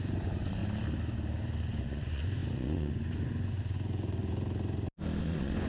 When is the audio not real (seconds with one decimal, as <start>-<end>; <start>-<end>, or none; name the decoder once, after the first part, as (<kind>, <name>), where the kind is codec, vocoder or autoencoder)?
0.0-0.6 (vocoder, Vocos); 1.8-4.2; 5.2-5.7